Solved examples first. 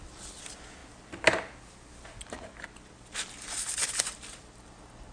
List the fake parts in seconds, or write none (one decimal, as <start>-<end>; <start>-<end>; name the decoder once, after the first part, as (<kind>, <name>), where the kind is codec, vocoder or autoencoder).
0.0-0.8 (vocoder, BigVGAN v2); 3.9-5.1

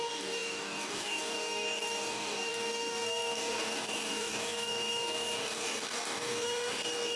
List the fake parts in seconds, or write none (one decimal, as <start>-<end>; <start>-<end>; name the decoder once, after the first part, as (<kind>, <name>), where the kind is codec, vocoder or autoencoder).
0.0-7.2 (codec, DAC)

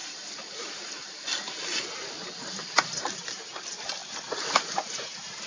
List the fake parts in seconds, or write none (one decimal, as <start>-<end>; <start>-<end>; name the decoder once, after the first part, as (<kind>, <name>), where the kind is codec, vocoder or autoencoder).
0.0-1.0 (vocoder, BigVGAN v2)